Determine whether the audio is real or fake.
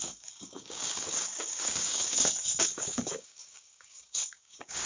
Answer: fake